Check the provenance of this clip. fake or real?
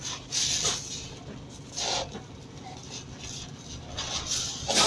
real